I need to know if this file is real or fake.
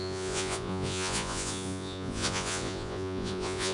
fake